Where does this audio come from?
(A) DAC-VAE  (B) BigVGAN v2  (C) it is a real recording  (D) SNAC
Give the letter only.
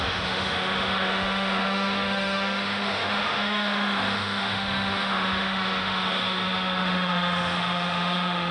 A